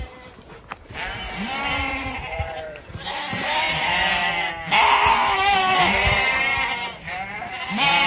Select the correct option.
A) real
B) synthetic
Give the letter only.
B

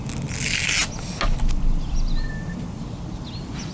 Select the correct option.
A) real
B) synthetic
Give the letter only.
A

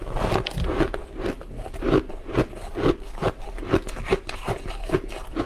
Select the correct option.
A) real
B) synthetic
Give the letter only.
A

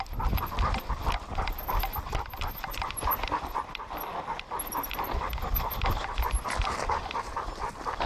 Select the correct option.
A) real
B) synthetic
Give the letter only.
A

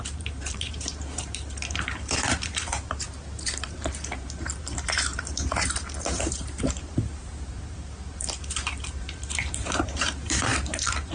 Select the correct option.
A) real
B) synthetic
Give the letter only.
B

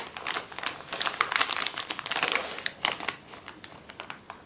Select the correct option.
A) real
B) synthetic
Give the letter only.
A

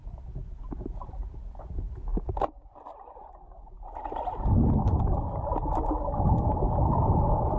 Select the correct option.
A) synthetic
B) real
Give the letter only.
B